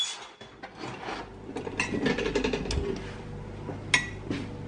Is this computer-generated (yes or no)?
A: no